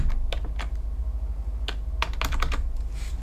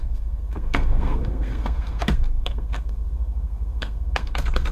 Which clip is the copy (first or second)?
second